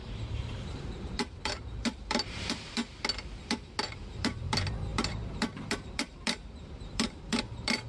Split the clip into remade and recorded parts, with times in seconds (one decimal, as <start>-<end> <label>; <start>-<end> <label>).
0.0-2.8 remade; 2.8-3.9 recorded; 3.9-7.9 remade